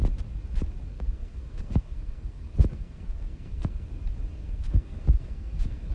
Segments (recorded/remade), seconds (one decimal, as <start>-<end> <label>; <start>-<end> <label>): 0.0-0.9 recorded; 0.9-3.9 remade; 3.9-4.4 recorded; 4.4-5.9 remade